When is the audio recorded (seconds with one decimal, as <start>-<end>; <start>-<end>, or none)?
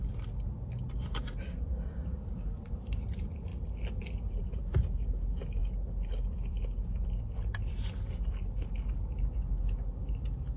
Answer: 0.0-5.6; 8.1-10.6